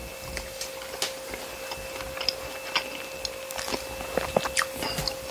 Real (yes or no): yes